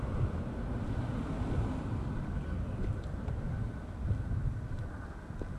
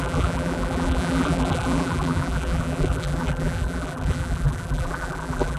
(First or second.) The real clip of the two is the first